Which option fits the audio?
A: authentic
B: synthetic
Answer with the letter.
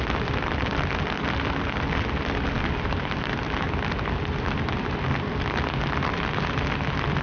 A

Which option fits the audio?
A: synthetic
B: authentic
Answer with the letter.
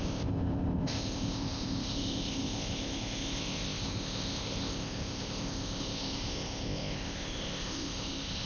A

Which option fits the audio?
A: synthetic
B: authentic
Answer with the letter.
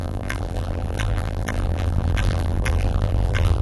A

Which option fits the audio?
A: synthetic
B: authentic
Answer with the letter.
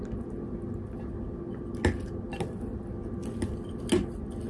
B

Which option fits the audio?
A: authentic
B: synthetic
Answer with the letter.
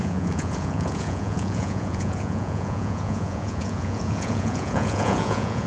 B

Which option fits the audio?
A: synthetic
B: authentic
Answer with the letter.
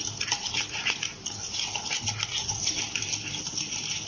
B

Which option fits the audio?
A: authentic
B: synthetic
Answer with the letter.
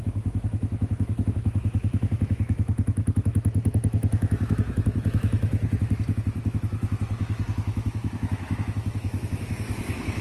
B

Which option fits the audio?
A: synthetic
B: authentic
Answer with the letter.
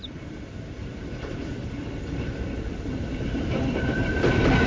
A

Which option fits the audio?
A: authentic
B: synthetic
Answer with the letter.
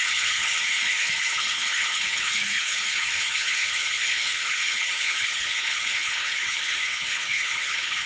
B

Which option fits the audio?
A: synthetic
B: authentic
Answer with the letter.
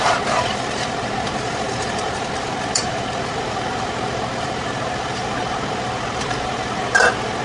A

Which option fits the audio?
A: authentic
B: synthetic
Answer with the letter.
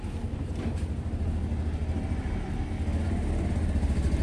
A